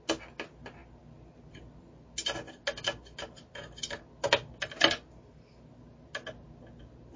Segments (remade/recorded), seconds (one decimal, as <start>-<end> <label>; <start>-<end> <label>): 0.0-7.2 recorded